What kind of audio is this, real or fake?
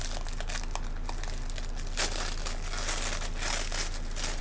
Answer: real